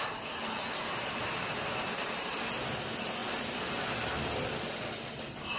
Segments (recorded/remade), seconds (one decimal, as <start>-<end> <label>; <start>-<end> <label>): 0.0-5.6 recorded